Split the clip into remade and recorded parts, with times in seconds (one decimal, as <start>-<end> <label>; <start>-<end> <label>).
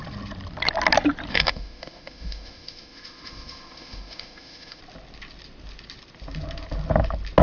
0.0-1.3 recorded; 1.3-4.8 remade; 4.8-7.4 recorded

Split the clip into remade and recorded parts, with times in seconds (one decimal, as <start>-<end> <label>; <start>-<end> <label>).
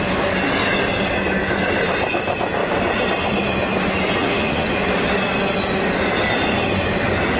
0.0-4.2 recorded; 4.2-4.9 remade; 4.9-7.4 recorded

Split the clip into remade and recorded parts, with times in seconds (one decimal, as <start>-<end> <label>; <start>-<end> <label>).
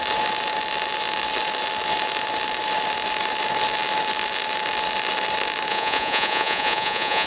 0.0-5.7 recorded; 5.7-7.3 remade